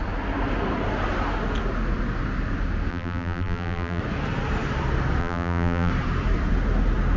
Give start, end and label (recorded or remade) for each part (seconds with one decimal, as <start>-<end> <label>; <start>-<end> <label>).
0.0-2.9 recorded; 2.9-4.0 remade; 4.0-5.2 recorded; 5.2-5.9 remade; 5.9-7.2 recorded